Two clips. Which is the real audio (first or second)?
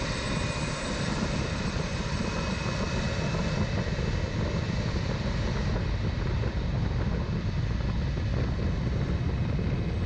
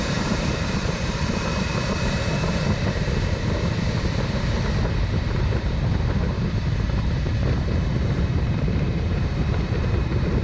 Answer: first